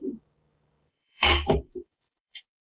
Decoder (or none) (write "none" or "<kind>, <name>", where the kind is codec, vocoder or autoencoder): codec, DAC